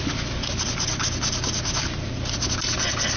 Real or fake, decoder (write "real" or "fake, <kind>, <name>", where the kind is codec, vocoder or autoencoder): real